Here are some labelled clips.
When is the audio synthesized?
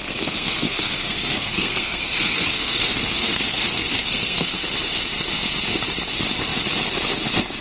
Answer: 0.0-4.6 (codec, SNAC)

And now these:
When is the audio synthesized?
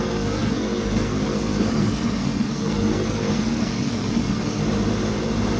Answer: 0.0-4.6 (codec, SNAC)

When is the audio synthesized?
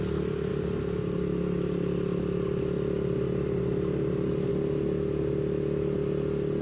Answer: none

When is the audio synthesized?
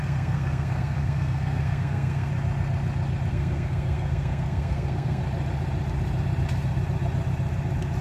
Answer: 0.0-2.3 (codec, SNAC); 3.3-5.2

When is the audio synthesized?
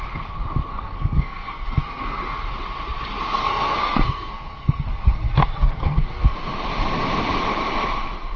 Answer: 0.7-2.2 (codec, SNAC); 3.4-6.3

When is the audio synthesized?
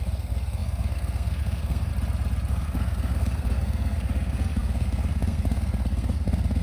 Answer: 0.0-1.9 (codec, SNAC); 2.5-6.6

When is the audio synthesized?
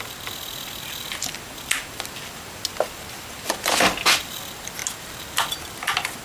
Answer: none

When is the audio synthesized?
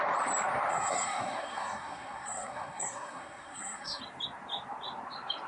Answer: 0.7-4.0 (codec, SNAC)